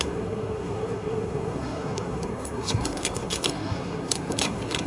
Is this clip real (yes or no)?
no